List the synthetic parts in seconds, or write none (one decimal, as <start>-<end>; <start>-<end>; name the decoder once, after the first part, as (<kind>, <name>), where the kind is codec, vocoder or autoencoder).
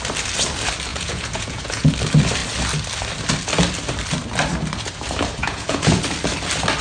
0.9-1.9 (vocoder, Vocos); 5.4-6.0